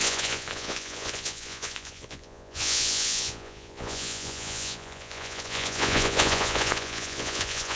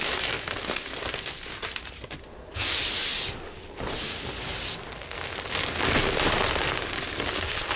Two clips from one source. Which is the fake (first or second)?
first